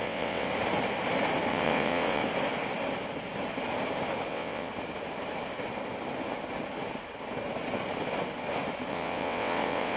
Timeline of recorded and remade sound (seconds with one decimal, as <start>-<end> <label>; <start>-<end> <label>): 0.0-0.5 remade; 0.5-1.5 recorded; 1.5-2.2 remade; 2.2-4.3 recorded; 4.3-4.7 remade; 4.7-8.9 recorded; 8.9-10.0 remade